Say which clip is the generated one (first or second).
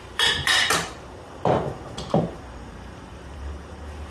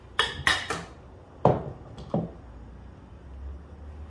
first